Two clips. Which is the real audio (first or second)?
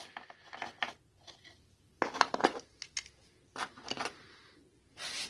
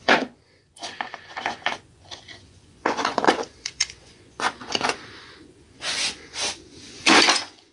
first